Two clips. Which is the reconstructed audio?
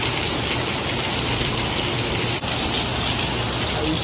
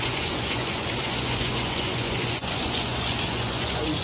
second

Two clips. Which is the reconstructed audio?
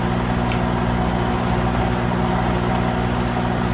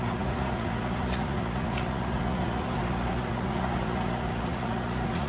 second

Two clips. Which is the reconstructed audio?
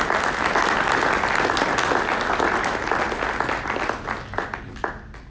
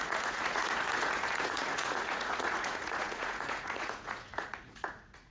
second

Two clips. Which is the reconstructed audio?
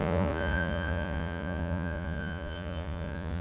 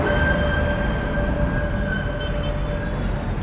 first